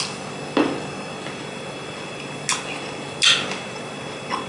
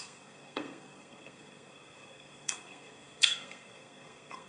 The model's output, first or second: second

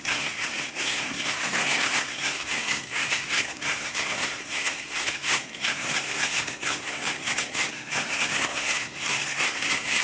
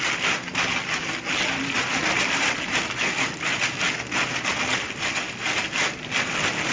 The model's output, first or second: first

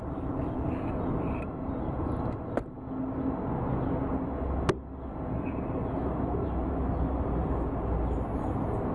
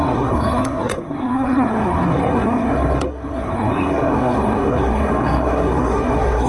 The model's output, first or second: second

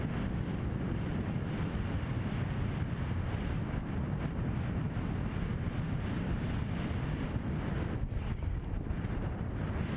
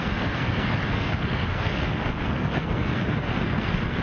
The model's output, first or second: second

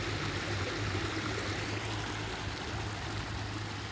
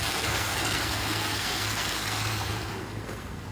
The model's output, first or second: second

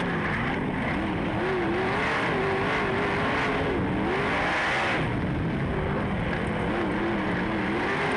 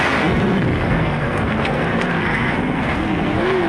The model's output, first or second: second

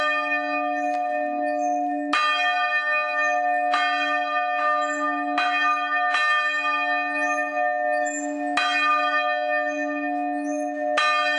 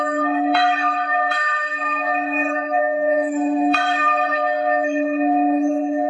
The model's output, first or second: second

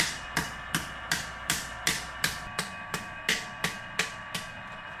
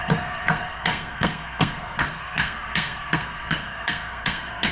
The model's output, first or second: second